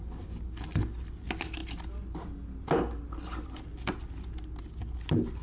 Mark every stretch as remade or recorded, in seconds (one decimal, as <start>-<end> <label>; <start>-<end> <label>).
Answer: 0.0-5.4 recorded